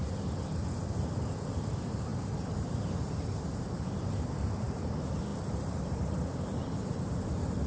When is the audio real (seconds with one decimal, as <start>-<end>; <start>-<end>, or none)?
0.0-1.2; 2.1-4.0